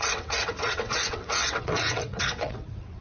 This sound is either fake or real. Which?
fake